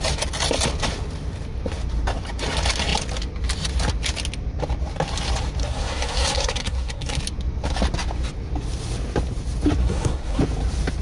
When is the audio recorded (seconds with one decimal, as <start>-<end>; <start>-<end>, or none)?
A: 0.0-5.6; 7.2-9.8; 10.4-11.0